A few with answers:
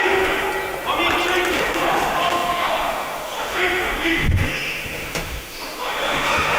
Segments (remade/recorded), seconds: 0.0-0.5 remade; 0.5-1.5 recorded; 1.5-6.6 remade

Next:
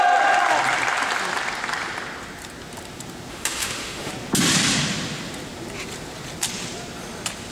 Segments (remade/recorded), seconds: 0.0-3.3 recorded; 3.3-4.1 remade; 4.1-7.5 recorded

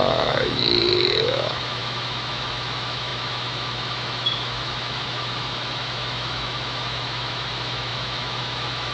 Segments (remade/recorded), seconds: 0.0-8.9 remade